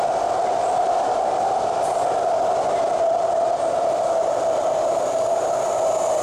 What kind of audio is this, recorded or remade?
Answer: recorded